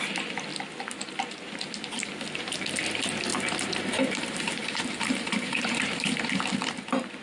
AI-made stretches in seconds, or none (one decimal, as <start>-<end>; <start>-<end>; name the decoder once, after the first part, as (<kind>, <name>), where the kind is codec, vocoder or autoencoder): 3.3-6.4 (vocoder, BigVGAN v2)